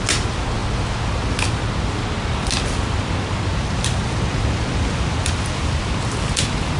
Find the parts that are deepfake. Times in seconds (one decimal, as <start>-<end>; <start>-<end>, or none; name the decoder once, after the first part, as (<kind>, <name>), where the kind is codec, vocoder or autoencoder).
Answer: 3.5-5.6 (vocoder, BigVGAN v2)